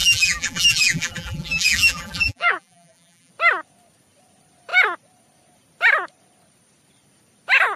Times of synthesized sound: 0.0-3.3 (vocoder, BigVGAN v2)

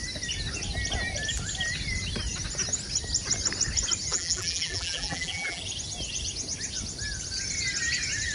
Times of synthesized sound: 4.1-5.6 (vocoder, BigVGAN v2)

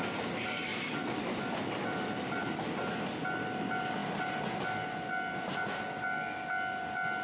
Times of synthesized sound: 0.7-1.4 (vocoder, BigVGAN v2); 4.0-4.6

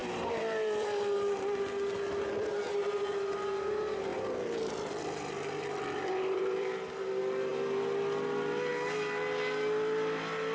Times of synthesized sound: 0.0-1.6 (vocoder, BigVGAN v2); 4.1-7.0

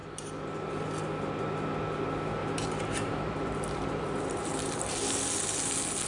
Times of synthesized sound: 2.4-4.8 (vocoder, BigVGAN v2)